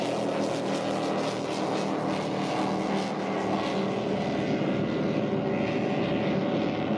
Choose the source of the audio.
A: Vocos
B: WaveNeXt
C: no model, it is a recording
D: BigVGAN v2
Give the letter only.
C